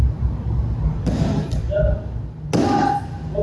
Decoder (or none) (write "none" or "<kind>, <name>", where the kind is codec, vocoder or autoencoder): none